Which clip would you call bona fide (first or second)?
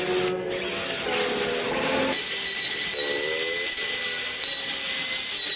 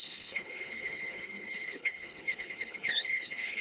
first